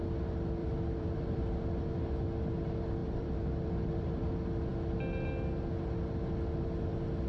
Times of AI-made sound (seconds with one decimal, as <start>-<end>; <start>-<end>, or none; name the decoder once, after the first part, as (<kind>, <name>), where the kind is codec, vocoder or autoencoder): 0.6-1.4 (vocoder, BigVGAN v2); 3.0-4.3